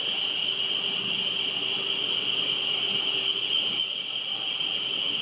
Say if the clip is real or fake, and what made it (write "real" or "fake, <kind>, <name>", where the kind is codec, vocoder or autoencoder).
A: real